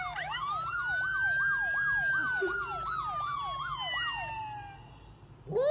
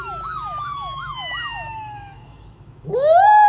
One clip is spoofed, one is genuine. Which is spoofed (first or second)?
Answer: second